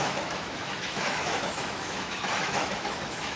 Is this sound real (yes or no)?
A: no